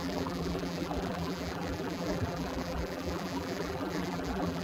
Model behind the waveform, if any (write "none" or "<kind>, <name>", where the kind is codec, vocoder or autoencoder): vocoder, BigVGAN v2